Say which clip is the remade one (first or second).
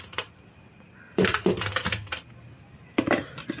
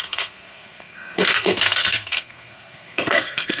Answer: second